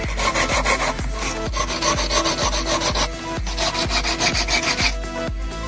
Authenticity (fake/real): real